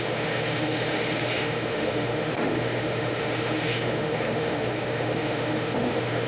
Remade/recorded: remade